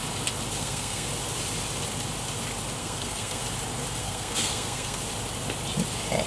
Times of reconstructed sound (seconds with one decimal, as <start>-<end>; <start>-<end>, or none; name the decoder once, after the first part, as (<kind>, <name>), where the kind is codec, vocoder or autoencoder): 0.6-1.1 (codec, SNAC); 2.8-3.4; 4.0-5.0